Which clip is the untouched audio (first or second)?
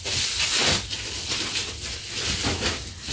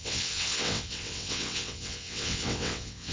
first